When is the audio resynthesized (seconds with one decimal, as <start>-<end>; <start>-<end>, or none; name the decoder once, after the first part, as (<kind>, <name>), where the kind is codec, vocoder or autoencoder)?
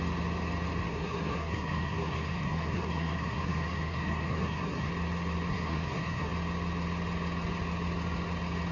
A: 0.9-4.9 (codec, SNAC); 5.5-6.3